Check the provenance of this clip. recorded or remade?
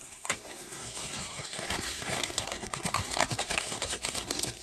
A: remade